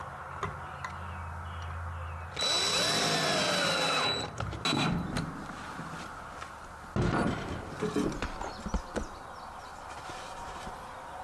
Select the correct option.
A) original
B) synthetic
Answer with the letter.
A